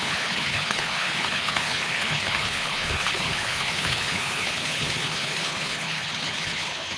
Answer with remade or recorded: remade